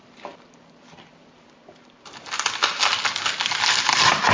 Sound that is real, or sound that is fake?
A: real